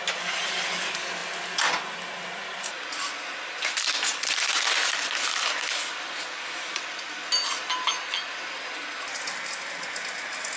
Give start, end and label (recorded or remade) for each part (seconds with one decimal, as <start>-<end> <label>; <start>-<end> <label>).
0.0-10.6 recorded

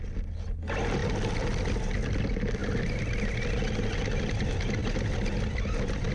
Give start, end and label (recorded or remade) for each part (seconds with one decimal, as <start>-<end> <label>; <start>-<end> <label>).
0.0-6.1 recorded